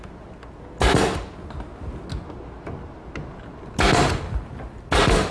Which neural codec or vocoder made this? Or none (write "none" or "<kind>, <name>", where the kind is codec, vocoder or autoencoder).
none